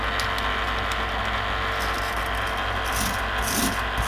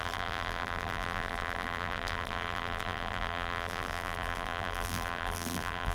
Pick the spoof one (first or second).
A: second